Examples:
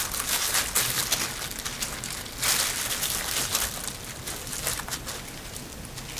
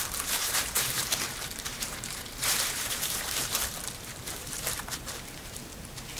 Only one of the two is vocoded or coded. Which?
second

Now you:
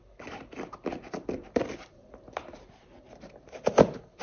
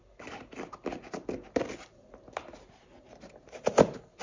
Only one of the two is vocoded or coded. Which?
first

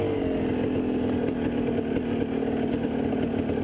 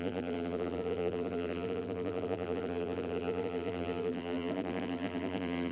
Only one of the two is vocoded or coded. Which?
second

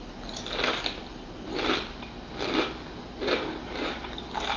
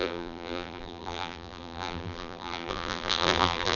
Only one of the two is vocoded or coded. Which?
second